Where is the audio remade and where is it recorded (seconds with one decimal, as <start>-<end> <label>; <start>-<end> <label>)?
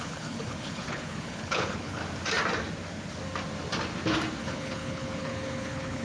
0.0-2.0 remade; 2.0-4.4 recorded; 4.4-6.0 remade